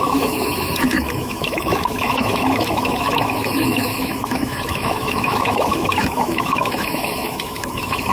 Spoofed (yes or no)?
yes